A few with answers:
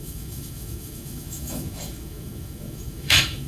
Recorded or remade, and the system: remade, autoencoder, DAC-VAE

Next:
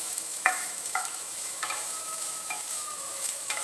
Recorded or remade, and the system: remade, autoencoder, DAC-VAE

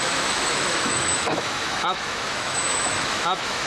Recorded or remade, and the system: remade, autoencoder, DAC-VAE